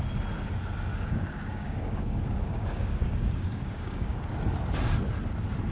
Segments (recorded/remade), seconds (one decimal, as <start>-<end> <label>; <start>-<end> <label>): 0.0-0.9 recorded; 0.9-4.3 remade; 4.3-5.7 recorded